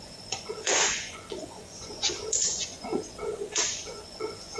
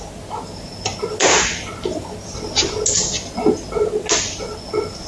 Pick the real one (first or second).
second